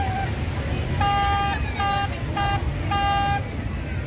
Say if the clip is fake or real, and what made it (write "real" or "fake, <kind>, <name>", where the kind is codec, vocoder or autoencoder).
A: real